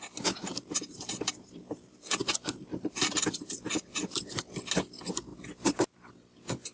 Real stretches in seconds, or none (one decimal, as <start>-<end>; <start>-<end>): 0.0-0.4; 4.4-6.7